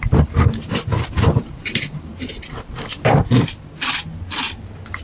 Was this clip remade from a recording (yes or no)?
no